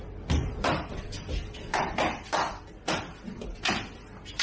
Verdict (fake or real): real